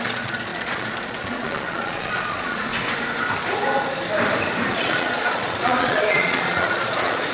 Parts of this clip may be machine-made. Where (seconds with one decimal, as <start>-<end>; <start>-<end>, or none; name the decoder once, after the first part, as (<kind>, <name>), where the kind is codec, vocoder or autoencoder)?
0.0-2.7 (vocoder, Vocos); 4.7-7.3